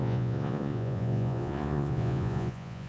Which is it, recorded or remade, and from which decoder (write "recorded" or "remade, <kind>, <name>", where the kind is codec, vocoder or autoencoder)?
remade, vocoder, Vocos